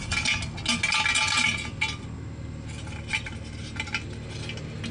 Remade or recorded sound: recorded